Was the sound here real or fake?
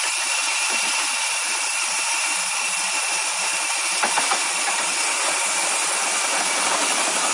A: real